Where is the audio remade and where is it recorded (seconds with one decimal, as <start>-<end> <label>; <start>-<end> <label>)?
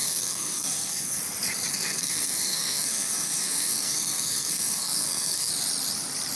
0.0-1.2 remade; 1.2-1.7 recorded; 1.7-5.5 remade; 5.5-6.4 recorded